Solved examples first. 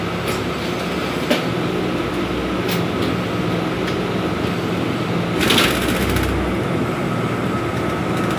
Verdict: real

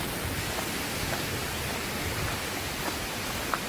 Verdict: real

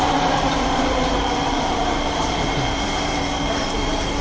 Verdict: fake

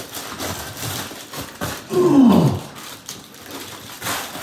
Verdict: fake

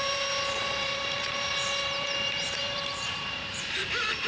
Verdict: fake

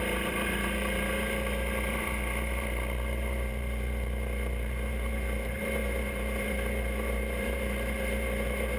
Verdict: fake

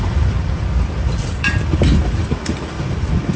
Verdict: fake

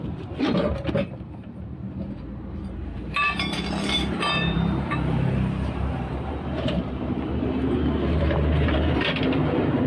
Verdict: fake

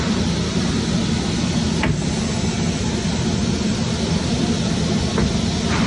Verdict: real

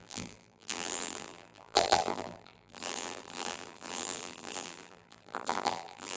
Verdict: fake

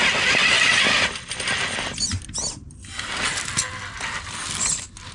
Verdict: real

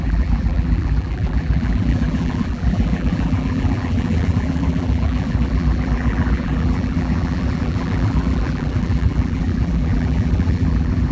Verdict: fake